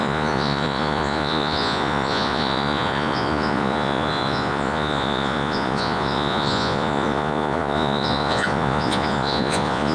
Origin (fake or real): fake